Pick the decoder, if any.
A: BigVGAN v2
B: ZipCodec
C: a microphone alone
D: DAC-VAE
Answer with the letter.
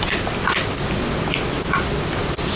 C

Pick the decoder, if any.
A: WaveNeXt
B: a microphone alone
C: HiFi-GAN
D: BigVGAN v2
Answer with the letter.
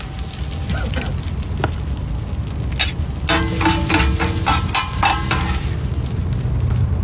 B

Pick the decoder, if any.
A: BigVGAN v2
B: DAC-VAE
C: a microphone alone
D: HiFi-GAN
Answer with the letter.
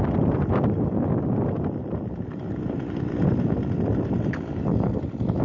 A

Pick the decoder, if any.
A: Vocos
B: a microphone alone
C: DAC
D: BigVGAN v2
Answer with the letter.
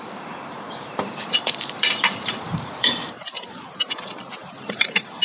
D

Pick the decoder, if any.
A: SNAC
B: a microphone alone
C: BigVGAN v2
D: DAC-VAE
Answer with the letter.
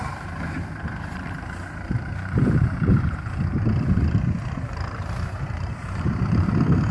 C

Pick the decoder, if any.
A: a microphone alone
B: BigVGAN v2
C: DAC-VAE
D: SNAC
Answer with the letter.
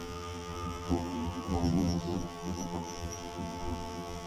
B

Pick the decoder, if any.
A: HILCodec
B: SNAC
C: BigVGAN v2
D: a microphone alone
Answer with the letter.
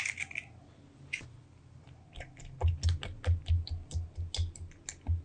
D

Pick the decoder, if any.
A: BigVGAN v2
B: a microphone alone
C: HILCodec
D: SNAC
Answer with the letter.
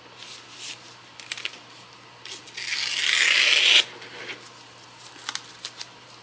B